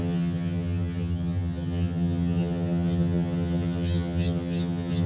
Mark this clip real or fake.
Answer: fake